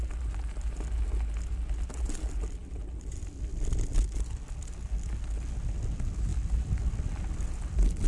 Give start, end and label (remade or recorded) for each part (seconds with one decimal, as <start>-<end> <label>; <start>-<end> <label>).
0.0-8.1 recorded